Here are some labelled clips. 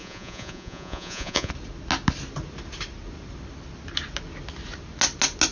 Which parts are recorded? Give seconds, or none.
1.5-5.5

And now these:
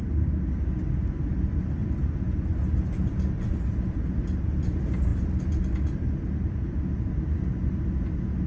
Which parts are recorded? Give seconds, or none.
0.0-8.5

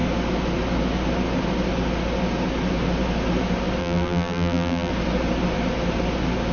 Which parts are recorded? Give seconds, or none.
0.0-3.8; 4.9-6.5

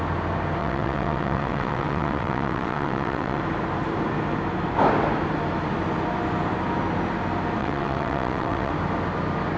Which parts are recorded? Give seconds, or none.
0.0-0.6; 3.4-7.6; 8.7-9.6

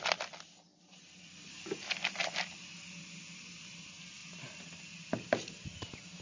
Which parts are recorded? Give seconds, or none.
0.0-6.2